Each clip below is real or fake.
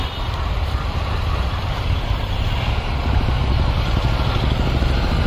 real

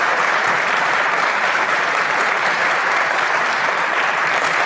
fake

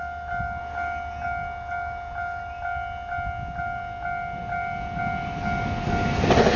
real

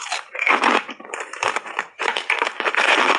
fake